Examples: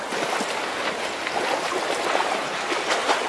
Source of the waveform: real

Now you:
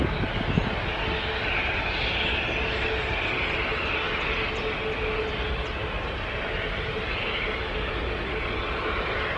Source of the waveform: real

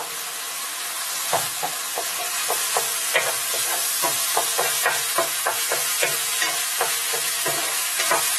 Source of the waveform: real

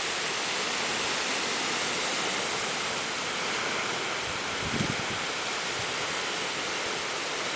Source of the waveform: real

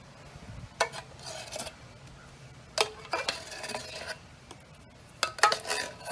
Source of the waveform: real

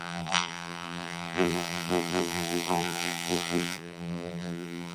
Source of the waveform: fake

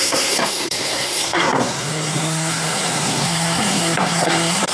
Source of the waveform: fake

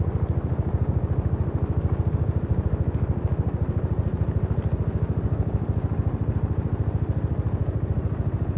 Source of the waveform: real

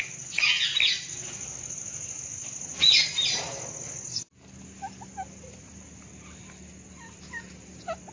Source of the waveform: real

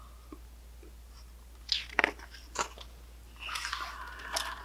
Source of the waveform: real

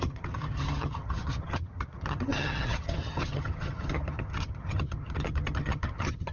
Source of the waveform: fake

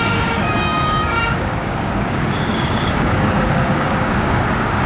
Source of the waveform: fake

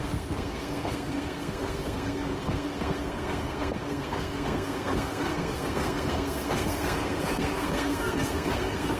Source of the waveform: fake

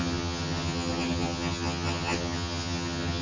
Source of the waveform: fake